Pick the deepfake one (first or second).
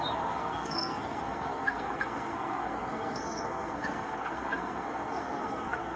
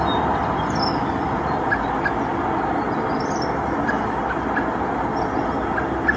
first